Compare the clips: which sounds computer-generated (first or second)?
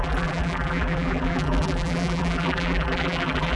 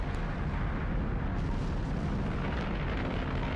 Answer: first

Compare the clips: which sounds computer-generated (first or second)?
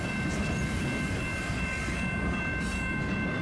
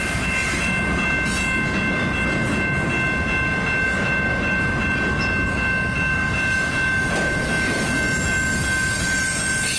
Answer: first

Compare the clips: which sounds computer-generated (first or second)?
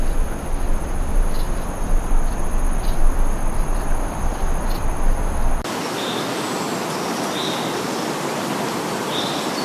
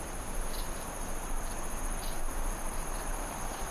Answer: second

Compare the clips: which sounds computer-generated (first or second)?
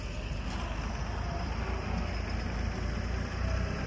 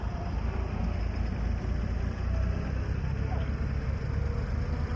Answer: second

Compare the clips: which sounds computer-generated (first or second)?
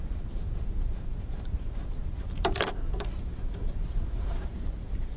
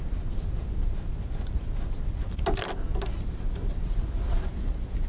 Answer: first